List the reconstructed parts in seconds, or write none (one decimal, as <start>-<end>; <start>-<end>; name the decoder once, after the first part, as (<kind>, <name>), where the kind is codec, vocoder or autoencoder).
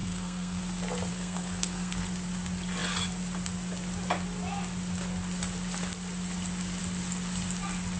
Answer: 0.0-0.6 (codec, SNAC); 1.1-2.1